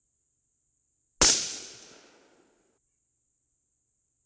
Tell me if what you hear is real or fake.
real